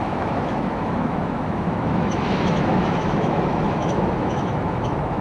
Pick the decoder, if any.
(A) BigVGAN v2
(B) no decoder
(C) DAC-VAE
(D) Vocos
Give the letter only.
C